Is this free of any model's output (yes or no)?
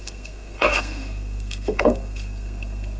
no